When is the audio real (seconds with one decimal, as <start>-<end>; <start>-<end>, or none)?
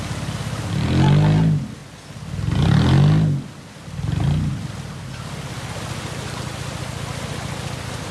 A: 0.0-8.1